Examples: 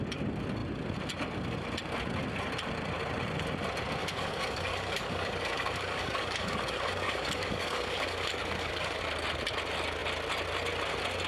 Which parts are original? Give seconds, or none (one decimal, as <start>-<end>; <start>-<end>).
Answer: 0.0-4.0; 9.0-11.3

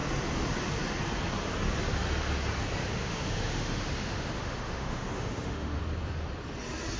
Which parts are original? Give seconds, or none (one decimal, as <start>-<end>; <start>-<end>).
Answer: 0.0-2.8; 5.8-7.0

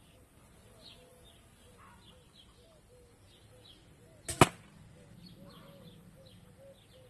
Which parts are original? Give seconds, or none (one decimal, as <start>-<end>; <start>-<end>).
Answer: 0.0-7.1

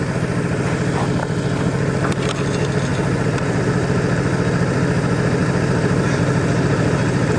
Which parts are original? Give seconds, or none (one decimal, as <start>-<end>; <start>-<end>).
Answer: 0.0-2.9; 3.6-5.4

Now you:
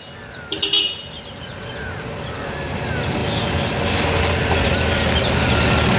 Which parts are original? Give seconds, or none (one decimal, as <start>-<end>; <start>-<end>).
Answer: 0.0-6.0